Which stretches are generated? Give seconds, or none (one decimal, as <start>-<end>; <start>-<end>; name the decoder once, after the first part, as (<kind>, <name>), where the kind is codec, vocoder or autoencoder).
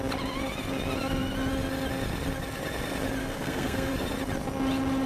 3.2-3.9 (codec, SNAC)